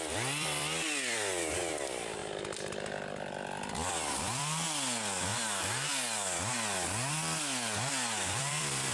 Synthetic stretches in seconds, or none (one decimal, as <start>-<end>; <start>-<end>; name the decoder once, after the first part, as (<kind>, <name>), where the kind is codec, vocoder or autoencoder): 0.0-2.2 (vocoder, BigVGAN v2); 3.9-5.3; 7.1-8.9